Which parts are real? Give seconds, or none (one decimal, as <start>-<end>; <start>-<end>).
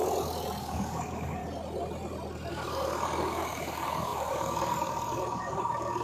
0.0-0.6; 1.4-2.5